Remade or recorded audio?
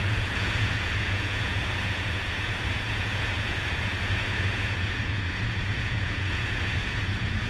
remade